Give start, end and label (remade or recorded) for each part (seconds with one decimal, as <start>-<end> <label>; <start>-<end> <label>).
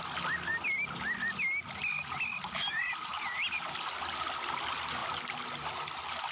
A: 0.0-6.3 recorded